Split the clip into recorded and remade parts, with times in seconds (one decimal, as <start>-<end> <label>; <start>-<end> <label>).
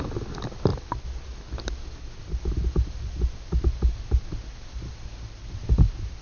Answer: 0.0-6.2 recorded